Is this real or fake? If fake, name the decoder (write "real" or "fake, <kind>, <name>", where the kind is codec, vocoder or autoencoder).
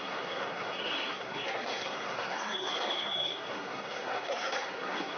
fake, codec, SNAC